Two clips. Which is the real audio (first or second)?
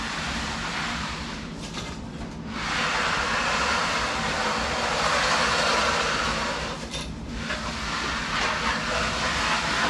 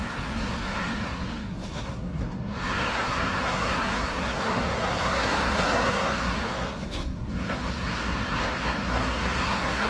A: first